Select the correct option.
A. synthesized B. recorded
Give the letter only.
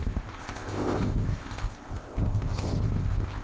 A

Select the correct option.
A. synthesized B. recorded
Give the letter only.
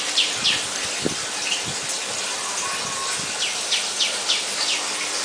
B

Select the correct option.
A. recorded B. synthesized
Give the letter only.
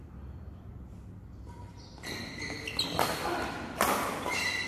A